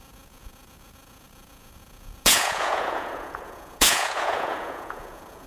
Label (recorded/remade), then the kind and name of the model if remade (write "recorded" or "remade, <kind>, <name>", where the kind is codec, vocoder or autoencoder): remade, vocoder, Vocos